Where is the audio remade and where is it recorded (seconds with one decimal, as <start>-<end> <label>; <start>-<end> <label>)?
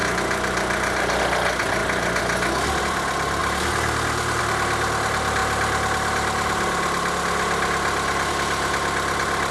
0.0-1.2 remade; 1.2-9.5 recorded